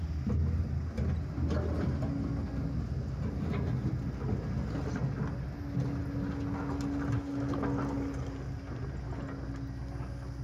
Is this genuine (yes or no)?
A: yes